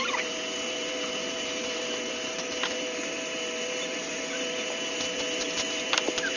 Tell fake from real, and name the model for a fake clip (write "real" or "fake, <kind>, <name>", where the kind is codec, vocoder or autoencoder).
fake, vocoder, BigVGAN v2